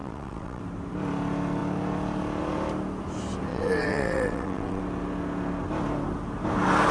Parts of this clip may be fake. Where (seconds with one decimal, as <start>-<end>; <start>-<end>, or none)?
0.0-0.6; 3.5-4.8